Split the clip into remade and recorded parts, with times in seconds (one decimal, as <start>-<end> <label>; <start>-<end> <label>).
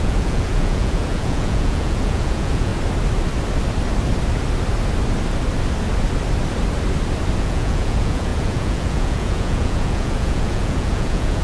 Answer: 0.0-2.7 remade; 2.7-7.4 recorded; 7.4-11.4 remade